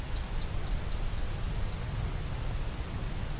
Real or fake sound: real